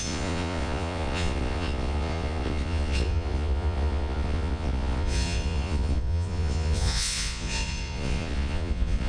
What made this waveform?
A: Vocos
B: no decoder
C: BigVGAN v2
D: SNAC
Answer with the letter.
A